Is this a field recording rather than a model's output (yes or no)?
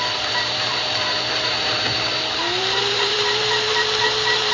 no